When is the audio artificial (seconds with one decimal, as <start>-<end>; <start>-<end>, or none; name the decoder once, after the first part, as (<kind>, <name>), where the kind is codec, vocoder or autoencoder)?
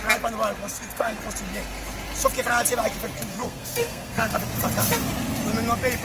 0.6-1.2 (codec, SNAC); 3.3-4.4